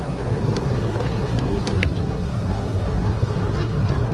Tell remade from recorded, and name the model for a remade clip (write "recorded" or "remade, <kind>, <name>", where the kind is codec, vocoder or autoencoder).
remade, codec, SNAC